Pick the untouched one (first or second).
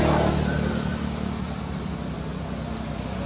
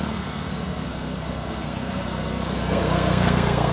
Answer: first